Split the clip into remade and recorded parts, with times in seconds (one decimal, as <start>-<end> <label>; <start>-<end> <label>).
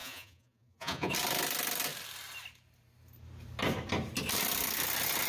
0.0-1.1 remade; 1.1-5.3 recorded